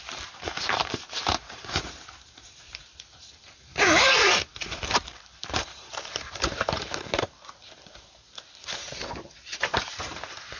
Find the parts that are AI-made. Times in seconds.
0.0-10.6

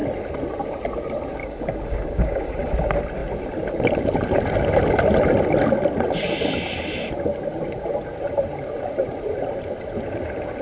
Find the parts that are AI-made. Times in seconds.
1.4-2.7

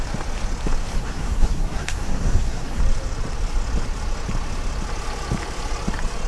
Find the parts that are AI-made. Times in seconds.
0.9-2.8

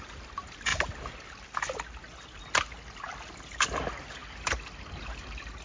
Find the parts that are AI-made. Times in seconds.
none